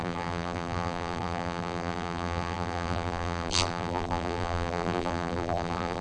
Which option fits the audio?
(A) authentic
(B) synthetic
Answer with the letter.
B